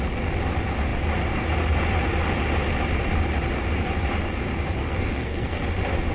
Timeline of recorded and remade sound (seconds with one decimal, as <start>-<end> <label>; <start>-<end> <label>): 0.0-4.8 recorded; 4.8-5.6 remade; 5.6-6.1 recorded